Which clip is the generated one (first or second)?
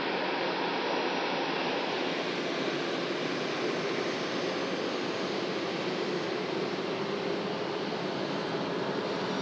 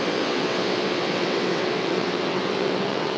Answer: second